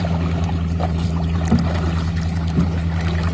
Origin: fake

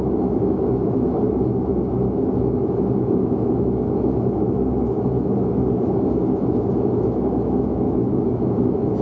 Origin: fake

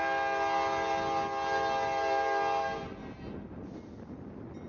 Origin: real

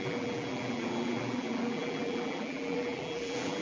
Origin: fake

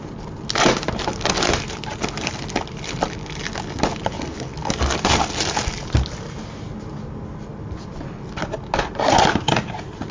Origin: real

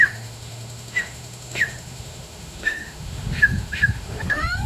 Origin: fake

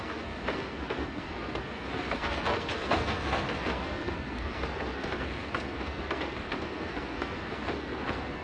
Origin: fake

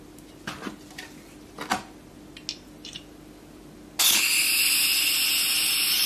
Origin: real